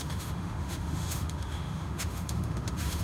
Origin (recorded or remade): remade